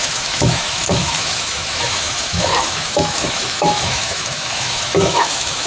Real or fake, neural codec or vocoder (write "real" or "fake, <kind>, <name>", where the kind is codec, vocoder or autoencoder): fake, autoencoder, DAC-VAE